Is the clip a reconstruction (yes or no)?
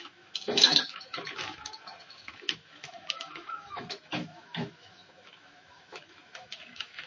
yes